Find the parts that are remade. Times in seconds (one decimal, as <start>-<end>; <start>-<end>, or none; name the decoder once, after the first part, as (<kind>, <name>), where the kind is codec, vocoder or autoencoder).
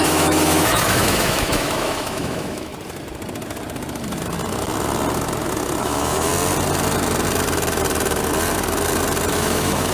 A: 0.0-2.7 (autoencoder, DAC-VAE); 5.8-6.3; 9.3-9.9